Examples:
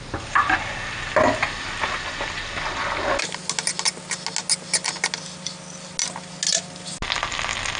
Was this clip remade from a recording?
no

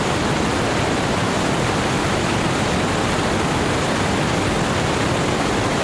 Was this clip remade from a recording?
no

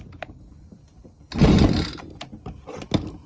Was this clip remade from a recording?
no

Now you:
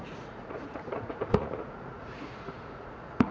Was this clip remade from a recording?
yes